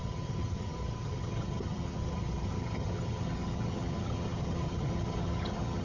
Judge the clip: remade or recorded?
remade